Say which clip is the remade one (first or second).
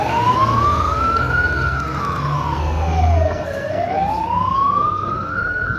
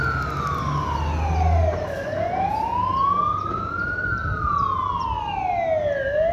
first